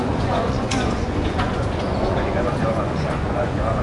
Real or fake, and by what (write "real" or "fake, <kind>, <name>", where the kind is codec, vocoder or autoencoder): fake, vocoder, Vocos